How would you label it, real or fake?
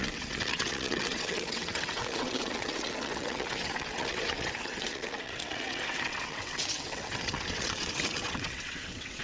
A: fake